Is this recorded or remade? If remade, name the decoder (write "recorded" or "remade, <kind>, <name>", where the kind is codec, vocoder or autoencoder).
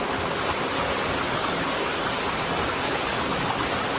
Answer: recorded